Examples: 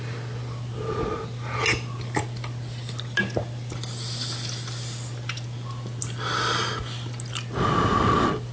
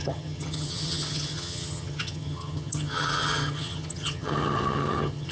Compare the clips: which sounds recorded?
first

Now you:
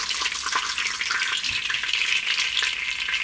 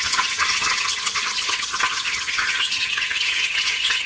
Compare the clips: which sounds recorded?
first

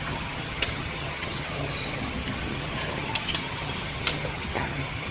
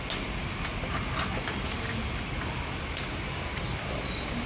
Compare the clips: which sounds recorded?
second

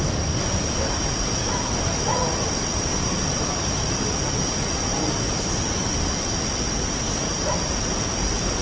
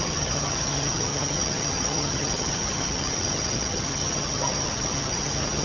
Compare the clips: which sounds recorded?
first